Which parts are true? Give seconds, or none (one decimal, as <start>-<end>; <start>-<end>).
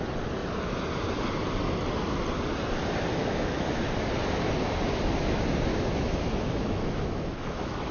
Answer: 0.0-3.2; 3.9-5.7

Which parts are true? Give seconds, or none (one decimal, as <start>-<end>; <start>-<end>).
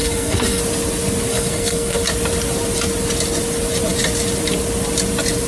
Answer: 0.6-1.3; 2.0-5.5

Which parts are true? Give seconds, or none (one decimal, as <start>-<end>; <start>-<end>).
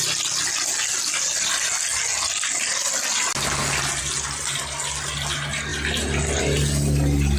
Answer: 0.0-7.4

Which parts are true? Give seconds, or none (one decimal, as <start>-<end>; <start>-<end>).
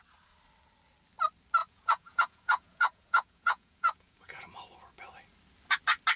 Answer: 0.0-1.6; 4.6-6.2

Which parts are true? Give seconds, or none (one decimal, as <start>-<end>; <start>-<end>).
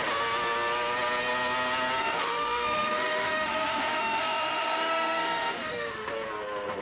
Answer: 0.0-2.0; 6.1-6.8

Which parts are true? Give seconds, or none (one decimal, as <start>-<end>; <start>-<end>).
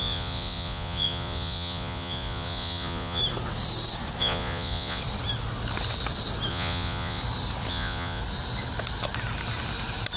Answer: 3.2-4.2; 5.0-6.5; 7.2-7.7; 8.2-10.2